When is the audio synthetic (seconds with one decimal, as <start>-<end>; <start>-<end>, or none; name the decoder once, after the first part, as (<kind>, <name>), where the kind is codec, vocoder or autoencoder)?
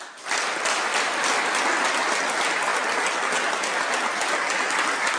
none